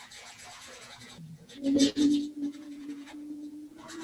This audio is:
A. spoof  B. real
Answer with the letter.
A